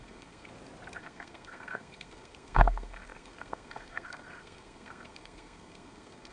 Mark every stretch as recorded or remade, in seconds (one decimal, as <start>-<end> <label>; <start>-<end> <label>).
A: 0.0-0.5 remade; 0.5-1.0 recorded; 1.0-6.3 remade